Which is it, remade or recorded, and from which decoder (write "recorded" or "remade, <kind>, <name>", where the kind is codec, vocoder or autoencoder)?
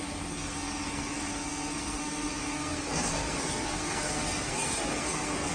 remade, codec, SNAC